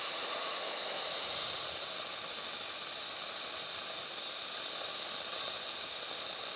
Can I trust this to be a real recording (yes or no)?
yes